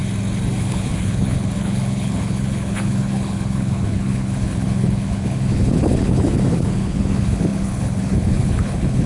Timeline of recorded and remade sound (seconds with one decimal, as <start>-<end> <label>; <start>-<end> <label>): 0.0-0.6 recorded; 0.6-9.1 remade